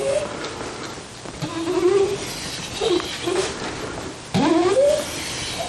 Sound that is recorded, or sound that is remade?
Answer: recorded